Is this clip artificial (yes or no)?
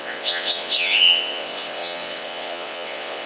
yes